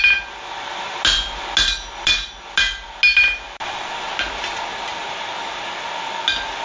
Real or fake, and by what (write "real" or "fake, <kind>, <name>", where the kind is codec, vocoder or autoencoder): real